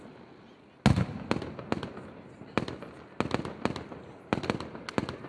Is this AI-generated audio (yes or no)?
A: no